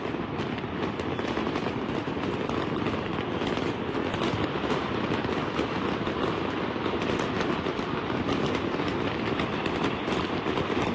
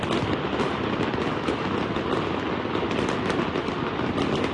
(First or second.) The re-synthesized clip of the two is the first